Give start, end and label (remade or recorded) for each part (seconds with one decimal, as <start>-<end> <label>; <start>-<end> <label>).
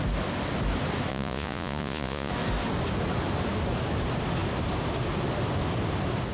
0.0-1.1 recorded; 1.1-2.3 remade; 2.3-6.3 recorded